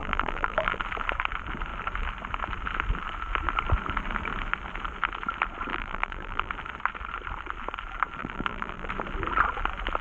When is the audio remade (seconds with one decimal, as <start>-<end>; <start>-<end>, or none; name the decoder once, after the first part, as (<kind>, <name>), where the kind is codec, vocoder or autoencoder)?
0.0-0.8 (vocoder, BigVGAN v2); 5.7-6.5; 8.2-8.9